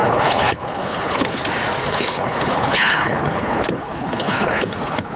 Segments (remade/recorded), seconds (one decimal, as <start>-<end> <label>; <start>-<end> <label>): 0.0-1.4 remade; 1.4-1.8 recorded; 1.8-5.2 remade